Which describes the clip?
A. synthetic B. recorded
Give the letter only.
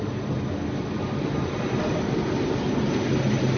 B